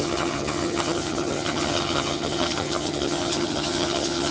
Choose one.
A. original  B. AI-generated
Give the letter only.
B